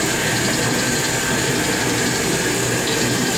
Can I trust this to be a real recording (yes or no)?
no